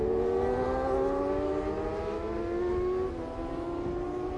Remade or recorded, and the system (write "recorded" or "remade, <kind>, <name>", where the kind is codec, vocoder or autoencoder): recorded